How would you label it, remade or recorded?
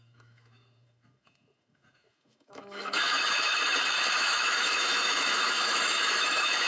remade